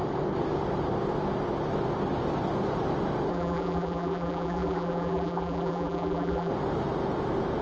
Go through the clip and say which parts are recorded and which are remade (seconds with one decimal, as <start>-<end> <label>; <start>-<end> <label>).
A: 0.0-3.3 recorded; 3.3-6.5 remade; 6.5-7.6 recorded